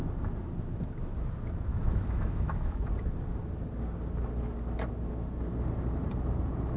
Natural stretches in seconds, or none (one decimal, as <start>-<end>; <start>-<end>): 0.0-1.7; 2.9-6.8

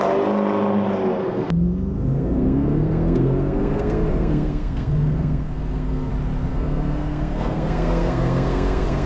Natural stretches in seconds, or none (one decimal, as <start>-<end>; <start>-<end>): 0.0-1.2; 6.1-6.5